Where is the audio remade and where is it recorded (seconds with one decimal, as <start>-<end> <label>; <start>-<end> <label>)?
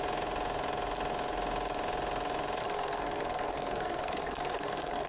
0.0-2.6 recorded; 2.6-5.1 remade